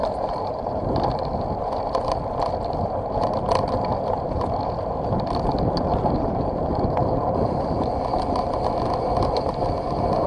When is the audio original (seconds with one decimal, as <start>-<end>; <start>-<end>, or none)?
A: 1.2-5.9; 7.9-10.3